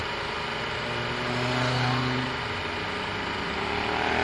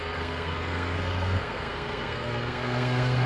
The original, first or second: first